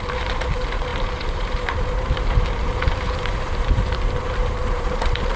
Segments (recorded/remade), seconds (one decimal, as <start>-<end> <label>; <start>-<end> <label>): 0.0-5.4 remade